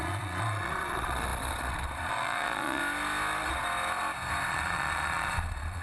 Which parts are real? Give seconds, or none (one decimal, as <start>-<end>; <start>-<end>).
2.8-4.5